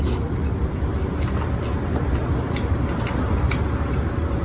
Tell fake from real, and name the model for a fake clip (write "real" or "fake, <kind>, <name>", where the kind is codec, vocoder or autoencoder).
real